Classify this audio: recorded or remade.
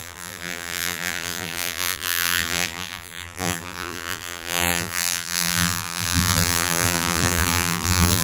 remade